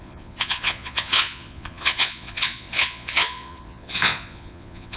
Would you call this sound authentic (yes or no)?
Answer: no